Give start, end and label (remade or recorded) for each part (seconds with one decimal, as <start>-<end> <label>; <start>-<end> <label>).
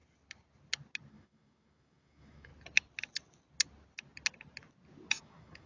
0.0-1.1 recorded; 1.1-2.5 remade; 2.5-5.1 recorded; 5.1-5.7 remade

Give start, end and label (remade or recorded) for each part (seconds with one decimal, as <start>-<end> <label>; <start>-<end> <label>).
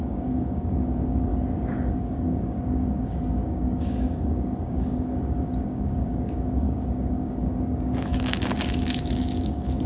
0.0-1.3 remade; 1.3-1.9 recorded; 1.9-9.9 remade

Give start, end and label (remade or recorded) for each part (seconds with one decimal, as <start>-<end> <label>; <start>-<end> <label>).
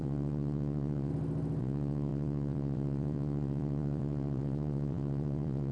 0.0-1.1 remade; 1.1-1.6 recorded; 1.6-5.7 remade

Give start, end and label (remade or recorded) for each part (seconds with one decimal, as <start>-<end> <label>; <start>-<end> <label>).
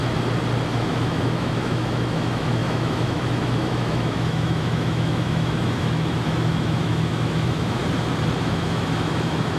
0.0-0.7 recorded; 0.7-7.8 remade; 7.8-8.4 recorded; 8.4-9.6 remade